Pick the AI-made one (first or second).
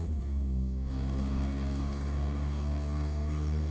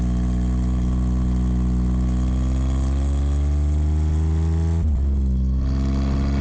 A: first